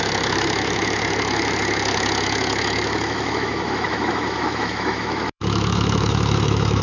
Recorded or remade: remade